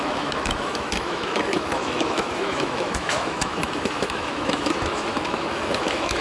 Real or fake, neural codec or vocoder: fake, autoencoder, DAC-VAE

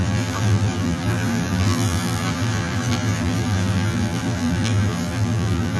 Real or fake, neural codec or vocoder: fake, vocoder, BigVGAN v2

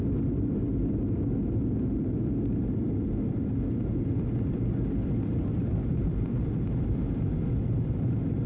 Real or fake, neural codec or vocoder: real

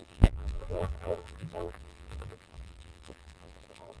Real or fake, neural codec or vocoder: fake, vocoder, BigVGAN v2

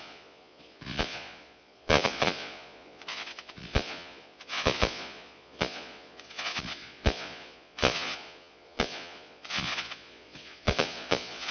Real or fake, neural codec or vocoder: fake, vocoder, Vocos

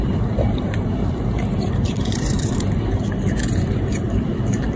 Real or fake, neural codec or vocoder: fake, vocoder, BigVGAN v2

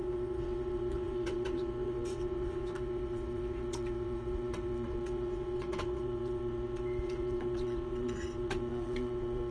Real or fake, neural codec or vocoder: fake, vocoder, WaveNeXt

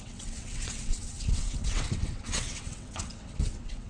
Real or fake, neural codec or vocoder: fake, vocoder, WaveNeXt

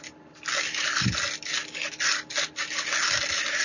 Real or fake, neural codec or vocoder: real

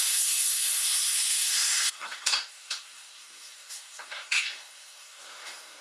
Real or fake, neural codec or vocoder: fake, codec, SNAC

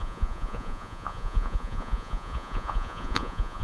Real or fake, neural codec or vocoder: fake, vocoder, Vocos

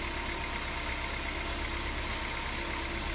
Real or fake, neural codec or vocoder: real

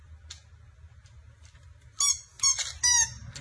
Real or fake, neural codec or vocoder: real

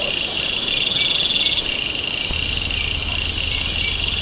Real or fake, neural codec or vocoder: real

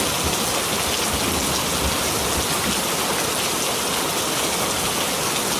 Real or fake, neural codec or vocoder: real